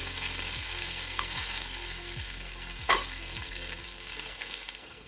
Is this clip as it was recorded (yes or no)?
no